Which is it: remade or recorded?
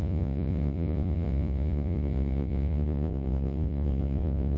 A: remade